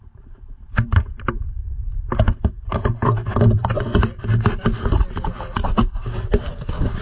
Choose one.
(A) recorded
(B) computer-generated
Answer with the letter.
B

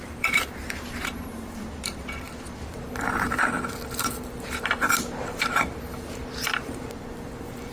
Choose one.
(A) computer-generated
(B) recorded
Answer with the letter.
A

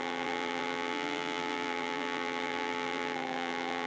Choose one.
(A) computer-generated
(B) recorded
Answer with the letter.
A